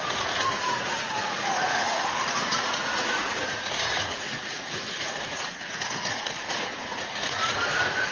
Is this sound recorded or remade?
remade